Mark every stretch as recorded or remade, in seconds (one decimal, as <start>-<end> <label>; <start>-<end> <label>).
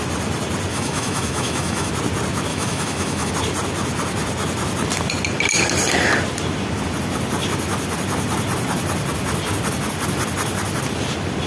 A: 0.0-0.7 recorded; 0.7-1.9 remade; 1.9-2.5 recorded; 2.5-3.3 remade; 3.3-11.5 recorded